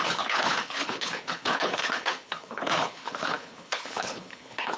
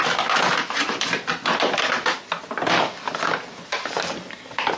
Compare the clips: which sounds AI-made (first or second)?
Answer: first